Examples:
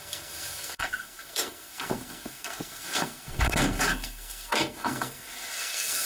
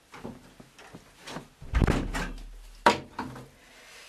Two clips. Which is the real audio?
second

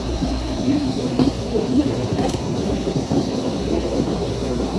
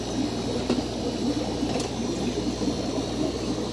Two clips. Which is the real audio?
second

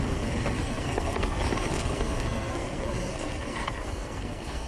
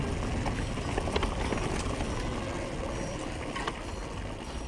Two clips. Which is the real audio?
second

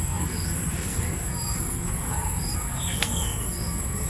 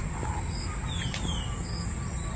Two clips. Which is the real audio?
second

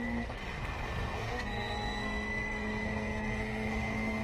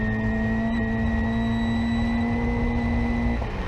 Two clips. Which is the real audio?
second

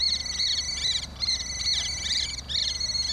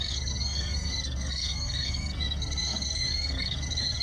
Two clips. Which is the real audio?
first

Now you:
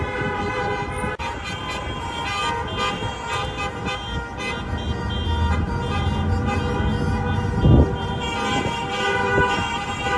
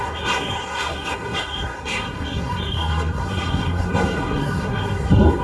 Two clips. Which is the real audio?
first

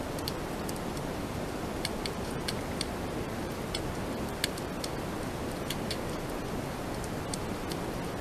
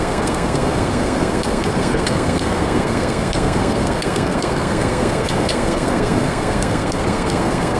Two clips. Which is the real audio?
first